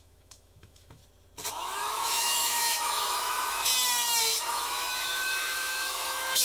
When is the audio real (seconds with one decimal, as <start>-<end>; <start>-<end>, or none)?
1.0-1.5; 3.7-4.2

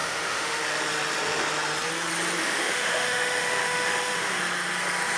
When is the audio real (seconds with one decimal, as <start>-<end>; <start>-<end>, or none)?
0.6-2.4; 4.4-5.2